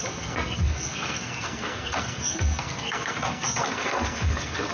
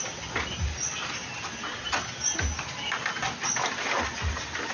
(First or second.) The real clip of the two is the second